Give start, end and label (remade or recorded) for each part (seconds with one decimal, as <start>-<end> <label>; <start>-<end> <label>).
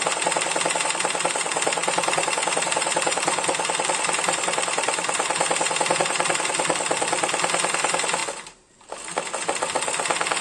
0.0-1.8 recorded; 1.8-6.5 remade; 6.5-10.4 recorded